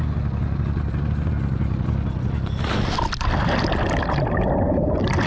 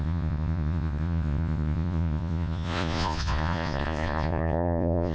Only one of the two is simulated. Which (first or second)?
second